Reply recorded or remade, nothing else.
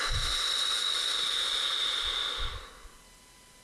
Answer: recorded